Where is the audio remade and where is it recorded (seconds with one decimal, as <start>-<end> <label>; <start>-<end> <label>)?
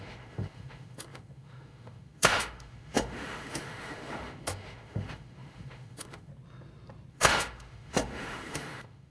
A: 0.0-6.3 remade; 6.3-7.1 recorded; 7.1-9.1 remade